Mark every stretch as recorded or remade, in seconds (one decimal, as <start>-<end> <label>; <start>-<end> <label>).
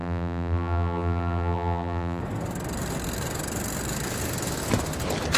0.0-2.2 remade; 2.2-5.4 recorded